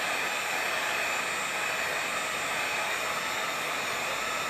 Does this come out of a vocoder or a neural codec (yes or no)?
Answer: no